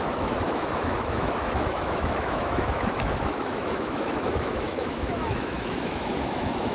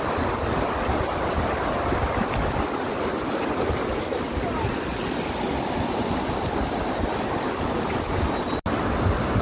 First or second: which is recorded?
second